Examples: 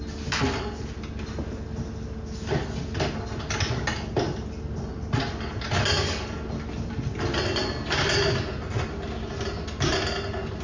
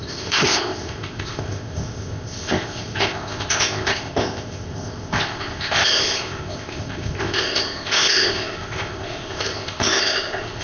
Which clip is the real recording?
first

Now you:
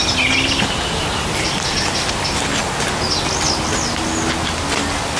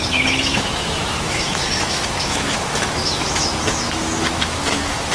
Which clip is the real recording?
first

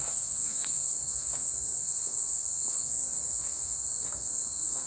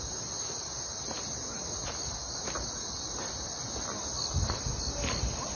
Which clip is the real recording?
second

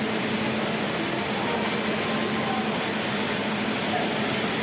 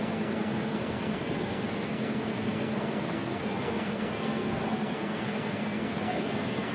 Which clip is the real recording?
first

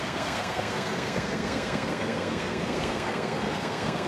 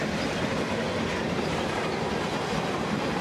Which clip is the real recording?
second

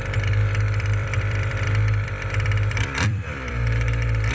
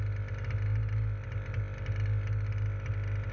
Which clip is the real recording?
second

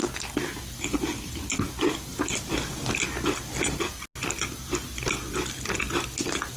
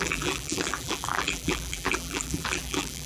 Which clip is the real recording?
first